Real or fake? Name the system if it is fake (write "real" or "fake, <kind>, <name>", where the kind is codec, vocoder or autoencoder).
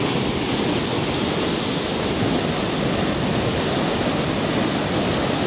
real